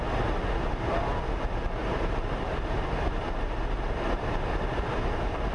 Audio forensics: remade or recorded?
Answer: remade